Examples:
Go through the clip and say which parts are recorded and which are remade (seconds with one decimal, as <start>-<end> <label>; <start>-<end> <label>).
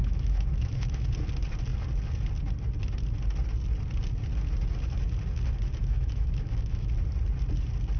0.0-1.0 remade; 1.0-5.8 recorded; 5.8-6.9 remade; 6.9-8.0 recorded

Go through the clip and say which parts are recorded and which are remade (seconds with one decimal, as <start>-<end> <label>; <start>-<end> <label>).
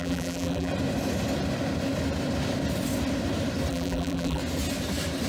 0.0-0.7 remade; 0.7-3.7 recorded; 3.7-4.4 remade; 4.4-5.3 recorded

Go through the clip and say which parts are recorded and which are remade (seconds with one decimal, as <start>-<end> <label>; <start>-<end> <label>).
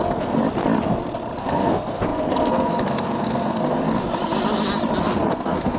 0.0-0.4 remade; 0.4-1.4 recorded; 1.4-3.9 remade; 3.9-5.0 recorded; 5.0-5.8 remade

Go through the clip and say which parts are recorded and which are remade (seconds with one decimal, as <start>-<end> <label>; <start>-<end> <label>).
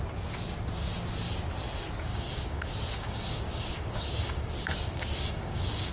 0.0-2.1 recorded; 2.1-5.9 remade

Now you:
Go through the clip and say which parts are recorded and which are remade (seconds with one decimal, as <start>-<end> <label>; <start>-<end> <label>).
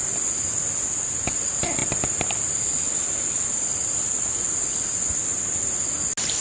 0.0-6.4 recorded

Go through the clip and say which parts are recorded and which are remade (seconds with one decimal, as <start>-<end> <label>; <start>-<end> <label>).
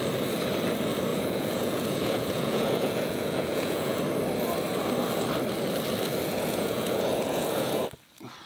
0.0-1.1 recorded; 1.1-4.0 remade; 4.0-6.3 recorded; 6.3-7.8 remade; 7.8-8.5 recorded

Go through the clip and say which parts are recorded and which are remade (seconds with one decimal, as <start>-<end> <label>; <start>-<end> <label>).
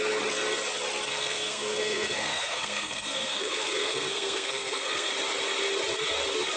0.0-1.1 recorded; 1.1-5.1 remade; 5.1-6.6 recorded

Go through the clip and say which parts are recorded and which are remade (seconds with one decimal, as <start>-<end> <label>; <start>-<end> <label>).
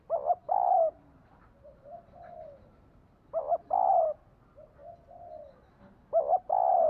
0.0-0.4 recorded; 0.4-3.4 remade; 3.4-6.9 recorded